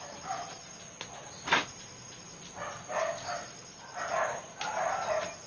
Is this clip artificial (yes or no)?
no